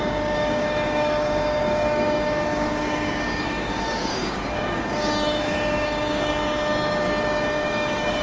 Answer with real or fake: fake